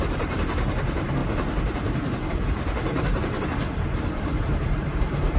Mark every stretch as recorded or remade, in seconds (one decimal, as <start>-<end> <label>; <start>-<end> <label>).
0.0-1.2 remade; 1.2-4.4 recorded; 4.4-5.4 remade